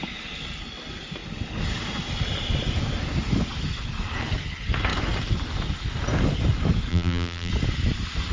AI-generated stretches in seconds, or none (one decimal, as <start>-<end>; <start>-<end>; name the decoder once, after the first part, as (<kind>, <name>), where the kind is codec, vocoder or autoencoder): 6.9-7.5 (vocoder, BigVGAN v2)